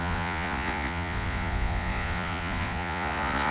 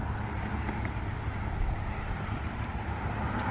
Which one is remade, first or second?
first